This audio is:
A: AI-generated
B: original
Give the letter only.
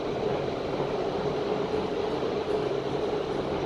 B